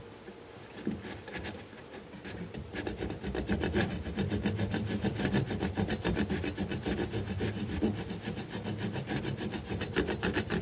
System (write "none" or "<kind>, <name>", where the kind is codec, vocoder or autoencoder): none